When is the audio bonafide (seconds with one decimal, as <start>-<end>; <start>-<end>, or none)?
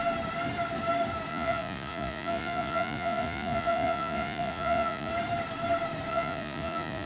0.0-1.3; 5.1-6.1